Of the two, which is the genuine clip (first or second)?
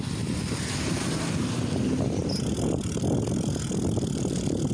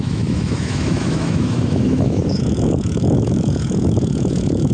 first